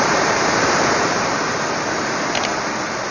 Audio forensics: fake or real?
real